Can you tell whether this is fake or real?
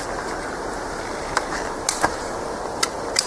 real